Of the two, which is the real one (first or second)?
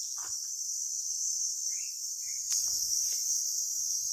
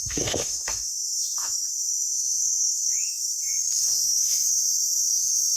first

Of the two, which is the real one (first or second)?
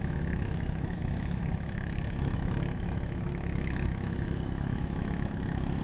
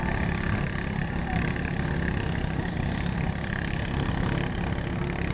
second